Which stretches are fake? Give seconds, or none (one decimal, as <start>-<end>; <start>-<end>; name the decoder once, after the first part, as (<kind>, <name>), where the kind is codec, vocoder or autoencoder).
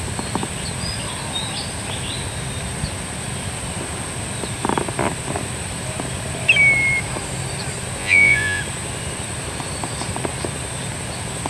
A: 8.0-8.6 (vocoder, Vocos)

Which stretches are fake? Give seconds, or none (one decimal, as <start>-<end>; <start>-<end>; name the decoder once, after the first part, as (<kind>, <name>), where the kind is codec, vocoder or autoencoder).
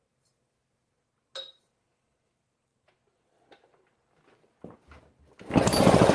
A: none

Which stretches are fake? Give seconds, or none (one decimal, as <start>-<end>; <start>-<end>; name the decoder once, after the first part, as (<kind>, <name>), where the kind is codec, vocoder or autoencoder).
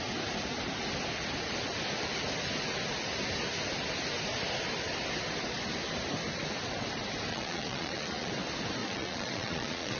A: 7.3-8.3 (vocoder, Vocos); 8.8-10.0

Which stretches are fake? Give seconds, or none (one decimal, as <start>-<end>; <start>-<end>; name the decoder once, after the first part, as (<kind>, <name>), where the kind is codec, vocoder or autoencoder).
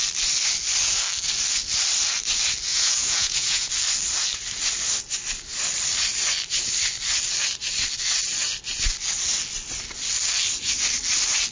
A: 2.7-3.7 (vocoder, Vocos)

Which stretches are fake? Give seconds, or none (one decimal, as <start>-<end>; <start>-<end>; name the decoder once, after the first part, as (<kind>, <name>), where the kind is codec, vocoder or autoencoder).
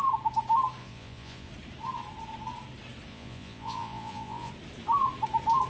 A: 0.8-1.5 (vocoder, Vocos); 3.1-4.5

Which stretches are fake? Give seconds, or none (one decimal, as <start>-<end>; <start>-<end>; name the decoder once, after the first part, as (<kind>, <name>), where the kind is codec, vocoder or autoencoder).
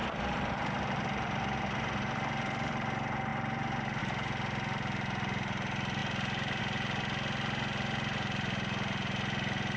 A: none